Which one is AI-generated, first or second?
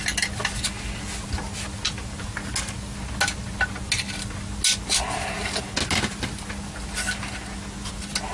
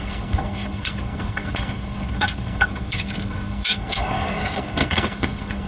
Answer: second